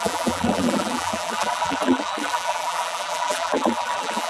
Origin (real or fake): fake